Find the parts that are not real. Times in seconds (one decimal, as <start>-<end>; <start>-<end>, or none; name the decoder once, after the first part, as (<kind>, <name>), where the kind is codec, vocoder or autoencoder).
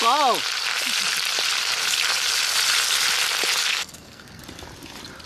3.7-4.4 (codec, SNAC)